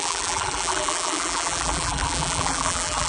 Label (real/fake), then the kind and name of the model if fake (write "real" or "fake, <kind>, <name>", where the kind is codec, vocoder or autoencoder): fake, vocoder, BigVGAN v2